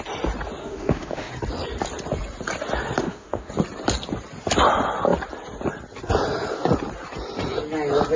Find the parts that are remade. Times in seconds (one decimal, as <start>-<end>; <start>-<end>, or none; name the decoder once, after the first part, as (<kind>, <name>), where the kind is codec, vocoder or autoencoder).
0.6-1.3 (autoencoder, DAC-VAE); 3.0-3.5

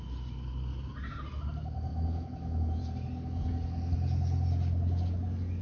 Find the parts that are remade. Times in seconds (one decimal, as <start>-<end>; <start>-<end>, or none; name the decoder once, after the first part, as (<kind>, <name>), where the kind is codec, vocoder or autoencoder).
1.9-2.8 (autoencoder, DAC-VAE)

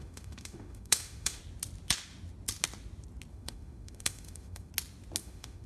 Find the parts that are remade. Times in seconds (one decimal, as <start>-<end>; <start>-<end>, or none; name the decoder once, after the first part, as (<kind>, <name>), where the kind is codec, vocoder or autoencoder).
0.0-1.4 (autoencoder, DAC-VAE); 3.3-4.7; 5.2-5.7

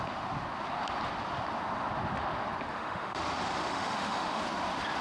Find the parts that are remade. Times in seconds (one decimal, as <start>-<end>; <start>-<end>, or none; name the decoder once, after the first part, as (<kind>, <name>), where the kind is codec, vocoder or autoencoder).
2.7-3.2 (autoencoder, DAC-VAE); 3.6-4.4